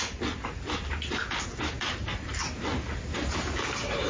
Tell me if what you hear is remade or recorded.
recorded